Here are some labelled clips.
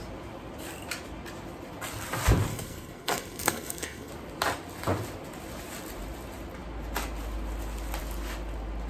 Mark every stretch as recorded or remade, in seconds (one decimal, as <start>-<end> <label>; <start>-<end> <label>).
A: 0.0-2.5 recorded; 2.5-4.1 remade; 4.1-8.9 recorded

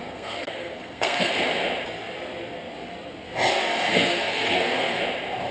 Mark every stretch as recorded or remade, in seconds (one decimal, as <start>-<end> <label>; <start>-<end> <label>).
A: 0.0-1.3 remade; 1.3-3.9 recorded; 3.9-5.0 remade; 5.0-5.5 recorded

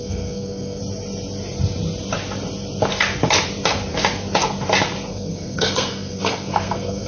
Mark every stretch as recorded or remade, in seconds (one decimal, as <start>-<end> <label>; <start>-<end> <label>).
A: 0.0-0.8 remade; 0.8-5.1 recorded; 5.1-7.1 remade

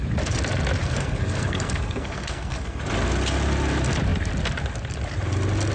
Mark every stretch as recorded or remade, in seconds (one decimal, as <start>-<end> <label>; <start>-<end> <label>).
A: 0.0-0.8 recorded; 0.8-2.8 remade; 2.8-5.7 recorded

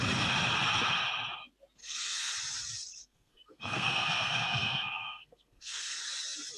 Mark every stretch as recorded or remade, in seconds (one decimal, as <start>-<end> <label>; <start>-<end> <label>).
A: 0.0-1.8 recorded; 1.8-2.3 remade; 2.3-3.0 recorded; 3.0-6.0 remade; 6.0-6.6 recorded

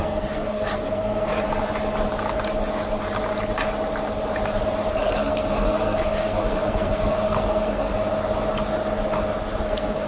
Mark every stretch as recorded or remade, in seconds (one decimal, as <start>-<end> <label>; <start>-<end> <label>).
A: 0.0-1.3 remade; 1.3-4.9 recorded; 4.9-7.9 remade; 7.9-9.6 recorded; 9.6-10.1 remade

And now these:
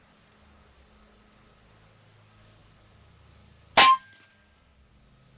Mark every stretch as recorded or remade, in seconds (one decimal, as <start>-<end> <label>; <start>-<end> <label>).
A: 0.0-5.4 recorded

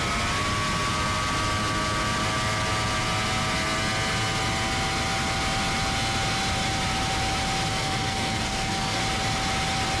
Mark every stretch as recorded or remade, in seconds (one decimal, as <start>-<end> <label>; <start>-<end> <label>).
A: 0.0-7.7 recorded; 7.7-9.0 remade; 9.0-10.0 recorded